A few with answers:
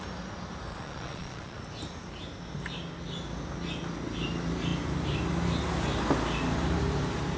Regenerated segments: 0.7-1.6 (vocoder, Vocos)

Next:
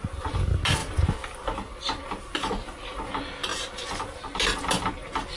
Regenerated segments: none

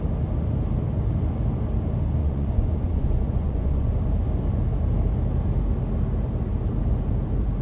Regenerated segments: 2.2-3.9 (vocoder, Vocos)

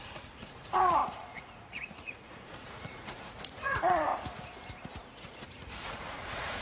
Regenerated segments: 0.0-4.1 (vocoder, Vocos); 5.5-6.6

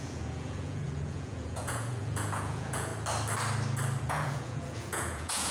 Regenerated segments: 0.0-2.9 (vocoder, Vocos); 4.0-5.5